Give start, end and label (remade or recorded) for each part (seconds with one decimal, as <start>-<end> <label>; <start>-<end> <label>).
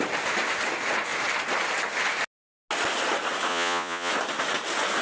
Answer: 0.0-3.5 recorded; 3.5-4.1 remade; 4.1-5.0 recorded